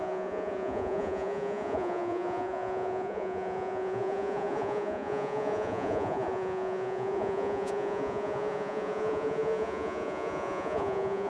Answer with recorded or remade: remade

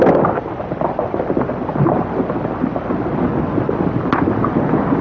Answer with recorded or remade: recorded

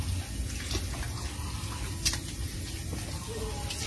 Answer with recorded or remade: recorded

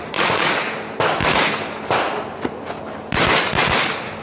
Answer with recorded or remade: recorded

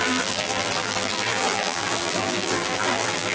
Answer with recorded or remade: remade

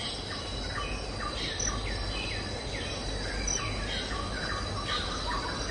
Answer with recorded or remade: recorded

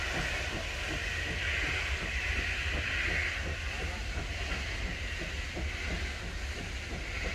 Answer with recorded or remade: recorded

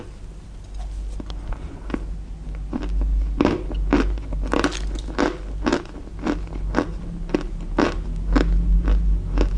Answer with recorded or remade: recorded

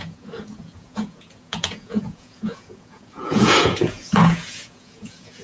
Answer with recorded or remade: remade